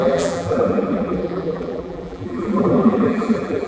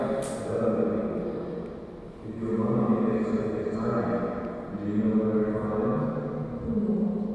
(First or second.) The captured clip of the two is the second